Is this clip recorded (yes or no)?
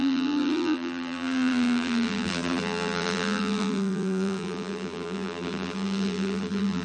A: no